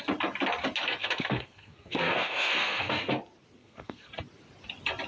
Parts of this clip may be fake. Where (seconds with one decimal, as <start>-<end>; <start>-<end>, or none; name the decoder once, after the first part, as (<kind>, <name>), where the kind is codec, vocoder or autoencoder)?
1.0-3.1 (codec, SNAC); 3.6-4.1